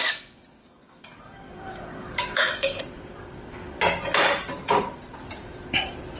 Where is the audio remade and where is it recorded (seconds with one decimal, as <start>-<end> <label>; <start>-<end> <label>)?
0.0-0.6 recorded; 0.6-2.8 remade; 2.8-6.2 recorded